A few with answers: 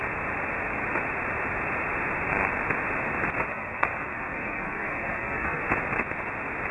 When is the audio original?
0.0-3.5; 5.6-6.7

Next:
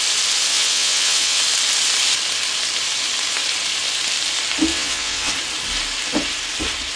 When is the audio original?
0.0-0.5; 1.4-4.7; 5.3-7.0

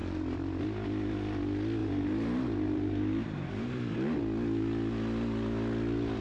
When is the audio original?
0.6-1.8; 4.2-6.2

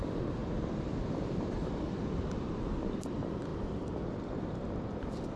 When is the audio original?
0.0-0.4; 1.8-5.4

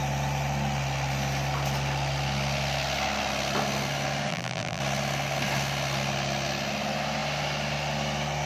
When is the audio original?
0.0-4.3; 4.8-8.5

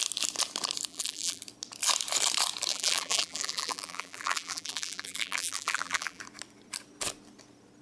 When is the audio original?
0.0-0.9; 1.4-2.7; 6.2-7.8